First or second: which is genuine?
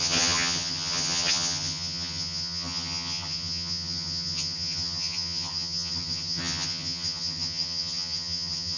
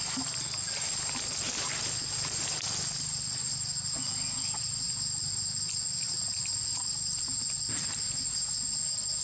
second